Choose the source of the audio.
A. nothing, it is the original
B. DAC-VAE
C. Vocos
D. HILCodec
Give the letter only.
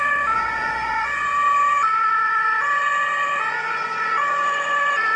C